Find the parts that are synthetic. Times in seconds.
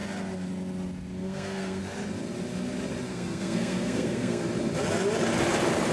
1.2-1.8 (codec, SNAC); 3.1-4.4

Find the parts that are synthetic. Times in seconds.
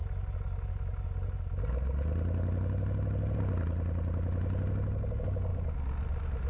5.5-6.5 (vocoder, BigVGAN v2)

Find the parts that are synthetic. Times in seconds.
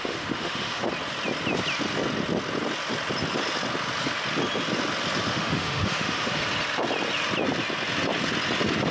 0.0-0.8 (autoencoder, DAC-VAE); 5.3-6.4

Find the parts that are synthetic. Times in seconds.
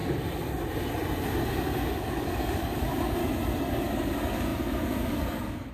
1.5-3.2 (codec, DAC); 3.7-5.7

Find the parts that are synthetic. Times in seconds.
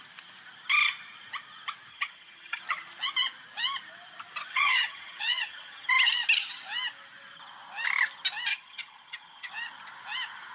1.9-2.6 (vocoder, HiFi-GAN); 4.5-5.9; 8.5-9.5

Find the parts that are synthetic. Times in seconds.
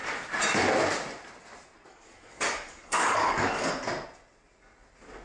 1.9-3.7 (codec, DAC)